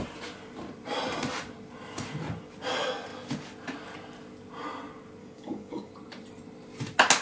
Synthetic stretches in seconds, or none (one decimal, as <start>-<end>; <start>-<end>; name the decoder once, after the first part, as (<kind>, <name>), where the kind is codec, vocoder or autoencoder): 5.2-5.9 (codec, DAC)